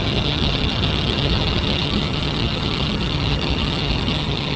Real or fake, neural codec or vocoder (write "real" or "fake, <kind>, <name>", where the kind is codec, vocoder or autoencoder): fake, vocoder, HiFi-GAN